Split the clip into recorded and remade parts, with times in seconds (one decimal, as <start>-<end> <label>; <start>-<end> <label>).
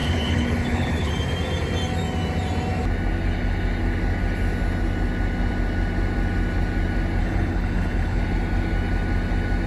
0.0-1.1 remade; 1.1-7.2 recorded; 7.2-8.2 remade; 8.2-9.7 recorded